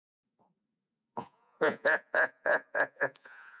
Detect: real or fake fake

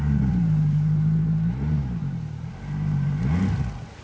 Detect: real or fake real